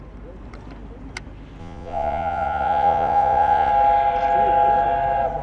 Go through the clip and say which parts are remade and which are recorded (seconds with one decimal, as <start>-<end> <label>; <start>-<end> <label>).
0.0-1.6 recorded; 1.6-3.7 remade; 3.7-5.4 recorded